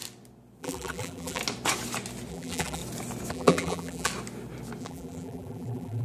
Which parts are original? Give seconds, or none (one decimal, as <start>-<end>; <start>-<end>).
0.0-0.6; 1.4-2.3; 2.8-3.3; 4.1-4.8